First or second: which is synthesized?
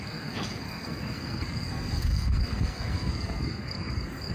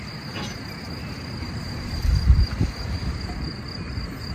first